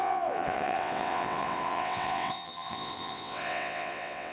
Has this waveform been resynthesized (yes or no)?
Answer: yes